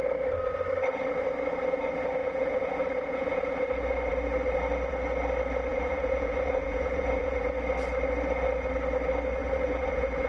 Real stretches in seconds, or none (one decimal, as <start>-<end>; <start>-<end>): 0.0-2.2; 3.5-5.7; 7.5-9.4